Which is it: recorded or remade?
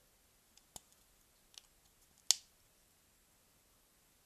recorded